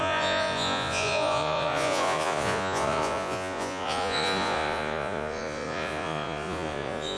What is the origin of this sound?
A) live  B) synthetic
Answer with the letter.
B